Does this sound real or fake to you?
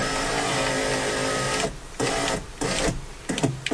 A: real